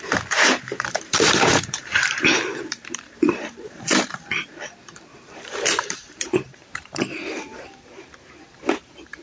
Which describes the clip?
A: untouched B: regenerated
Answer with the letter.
B